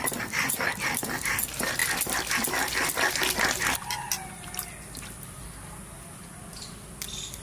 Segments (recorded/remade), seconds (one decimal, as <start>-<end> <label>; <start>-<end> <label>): 0.0-7.4 recorded